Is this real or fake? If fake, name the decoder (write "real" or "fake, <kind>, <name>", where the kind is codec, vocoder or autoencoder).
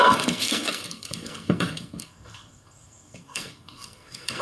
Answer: fake, codec, SNAC